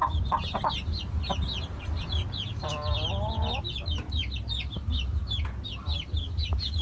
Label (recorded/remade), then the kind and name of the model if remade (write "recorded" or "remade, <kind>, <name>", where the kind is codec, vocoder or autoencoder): recorded